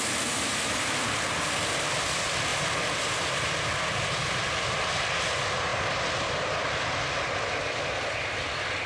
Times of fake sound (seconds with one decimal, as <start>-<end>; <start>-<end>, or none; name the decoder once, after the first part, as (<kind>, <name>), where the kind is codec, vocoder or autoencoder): none